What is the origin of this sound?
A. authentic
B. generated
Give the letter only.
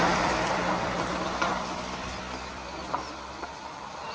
B